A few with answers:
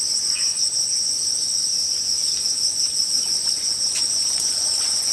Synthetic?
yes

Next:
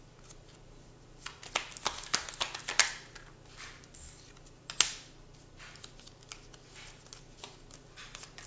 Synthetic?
no